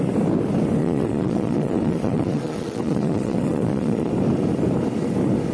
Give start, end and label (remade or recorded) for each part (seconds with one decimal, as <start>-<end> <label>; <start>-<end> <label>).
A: 0.0-0.8 recorded; 0.8-4.1 remade; 4.1-5.5 recorded